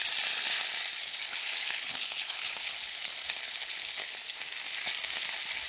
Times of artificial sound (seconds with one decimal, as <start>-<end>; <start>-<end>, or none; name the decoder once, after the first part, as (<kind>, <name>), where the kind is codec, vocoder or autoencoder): 1.0-4.4 (codec, HILCodec)